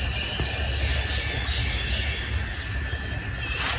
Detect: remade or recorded recorded